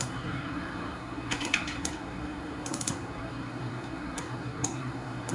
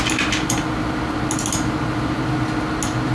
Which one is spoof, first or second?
first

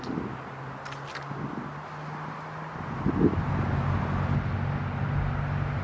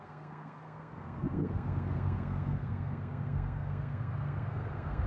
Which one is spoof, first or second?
second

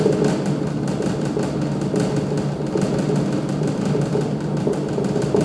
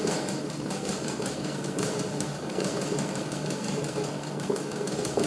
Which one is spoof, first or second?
second